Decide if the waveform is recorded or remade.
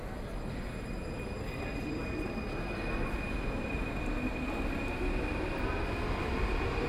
recorded